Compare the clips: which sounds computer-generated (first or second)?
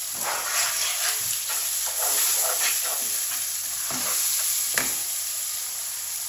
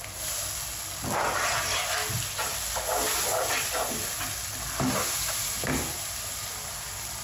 first